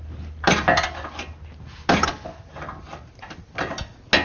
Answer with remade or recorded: recorded